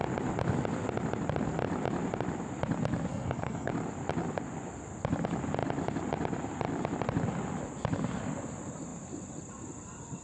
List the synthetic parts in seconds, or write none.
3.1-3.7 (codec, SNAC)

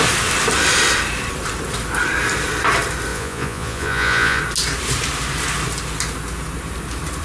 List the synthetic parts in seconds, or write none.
3.1-4.4 (vocoder, Vocos)

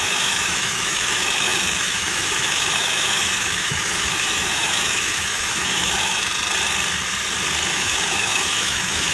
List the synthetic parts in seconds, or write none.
0.0-6.3 (autoencoder, DAC-VAE); 7.7-9.1

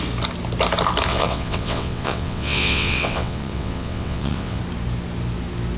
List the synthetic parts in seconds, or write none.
1.1-4.6 (vocoder, WaveNeXt)

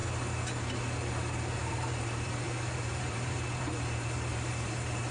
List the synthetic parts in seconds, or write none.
1.6-5.1 (vocoder, BigVGAN v2)

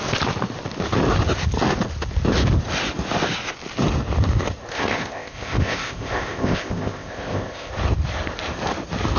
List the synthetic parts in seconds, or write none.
4.7-7.7 (codec, ZipCodec)

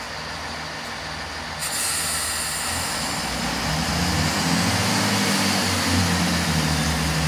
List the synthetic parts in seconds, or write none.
none